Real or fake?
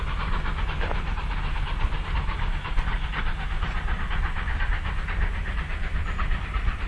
real